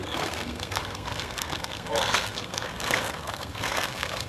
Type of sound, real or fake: fake